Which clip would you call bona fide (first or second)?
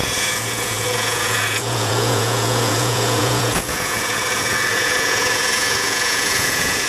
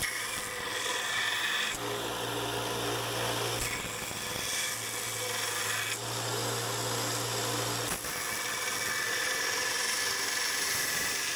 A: second